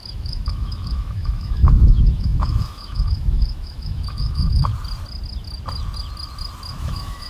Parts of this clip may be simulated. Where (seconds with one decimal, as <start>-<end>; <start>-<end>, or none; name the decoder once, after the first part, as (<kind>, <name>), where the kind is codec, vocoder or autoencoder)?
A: 0.0-4.7 (autoencoder, DAC-VAE); 6.7-7.3